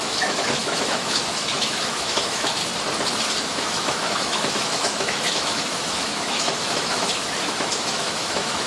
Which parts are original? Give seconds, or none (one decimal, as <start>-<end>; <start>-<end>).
2.6-3.4